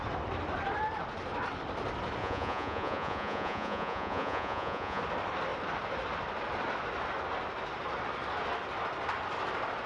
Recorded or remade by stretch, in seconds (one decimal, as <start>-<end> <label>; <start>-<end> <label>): 0.0-2.2 recorded; 2.2-5.0 remade; 5.0-9.9 recorded